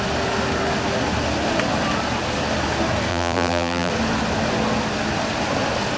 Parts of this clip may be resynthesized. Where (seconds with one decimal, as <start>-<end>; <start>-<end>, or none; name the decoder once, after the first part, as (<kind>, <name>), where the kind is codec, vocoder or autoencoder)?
3.1-3.9 (vocoder, BigVGAN v2)